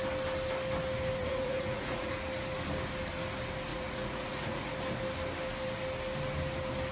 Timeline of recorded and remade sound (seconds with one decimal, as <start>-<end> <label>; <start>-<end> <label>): 0.0-1.2 recorded; 1.2-2.1 remade; 2.1-3.7 recorded; 3.7-4.7 remade; 4.7-6.9 recorded